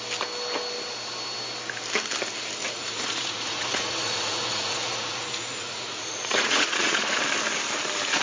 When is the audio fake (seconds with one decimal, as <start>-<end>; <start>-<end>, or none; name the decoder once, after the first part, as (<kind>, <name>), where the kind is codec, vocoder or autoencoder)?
2.6-7.2 (vocoder, Vocos)